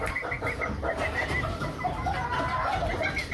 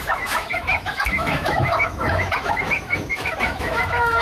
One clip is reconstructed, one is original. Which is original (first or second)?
first